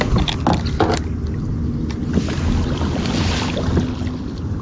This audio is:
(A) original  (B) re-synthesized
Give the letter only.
A